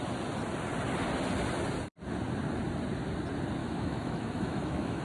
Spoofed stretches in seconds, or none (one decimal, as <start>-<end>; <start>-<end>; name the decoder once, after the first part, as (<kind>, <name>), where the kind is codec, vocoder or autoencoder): 3.6-5.0 (autoencoder, DAC-VAE)